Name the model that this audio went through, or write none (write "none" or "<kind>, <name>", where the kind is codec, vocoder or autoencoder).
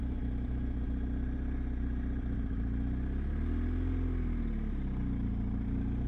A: none